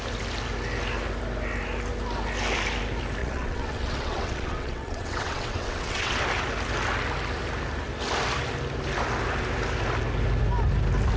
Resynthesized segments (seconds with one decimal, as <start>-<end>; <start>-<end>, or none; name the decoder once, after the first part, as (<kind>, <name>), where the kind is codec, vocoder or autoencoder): 3.2-6.2 (vocoder, WaveNeXt)